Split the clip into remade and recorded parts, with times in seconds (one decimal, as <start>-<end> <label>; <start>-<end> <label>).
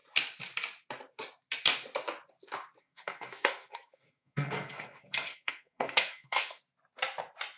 0.0-2.8 recorded; 2.8-6.6 remade; 6.6-7.6 recorded